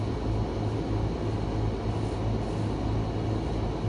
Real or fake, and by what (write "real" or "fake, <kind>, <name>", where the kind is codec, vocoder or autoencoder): real